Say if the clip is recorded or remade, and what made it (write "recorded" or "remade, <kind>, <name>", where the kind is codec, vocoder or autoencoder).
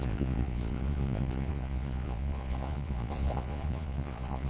remade, vocoder, Vocos